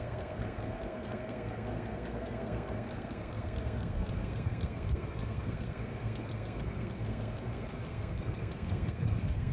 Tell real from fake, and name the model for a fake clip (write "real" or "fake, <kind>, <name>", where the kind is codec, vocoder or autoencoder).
fake, codec, SNAC